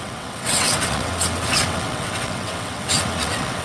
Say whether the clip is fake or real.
fake